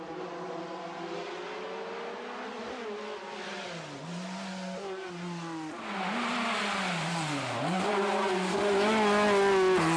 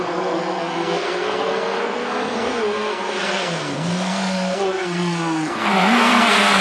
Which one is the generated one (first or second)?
second